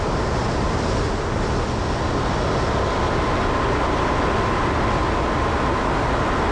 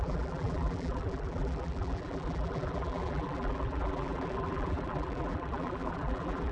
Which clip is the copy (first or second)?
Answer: second